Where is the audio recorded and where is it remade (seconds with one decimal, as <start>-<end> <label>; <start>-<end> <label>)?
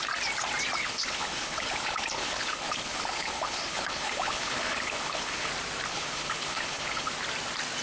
0.0-0.8 recorded; 0.8-5.5 remade; 5.5-5.9 recorded; 5.9-7.1 remade; 7.1-7.8 recorded